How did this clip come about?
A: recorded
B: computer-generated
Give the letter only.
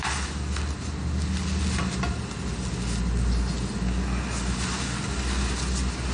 A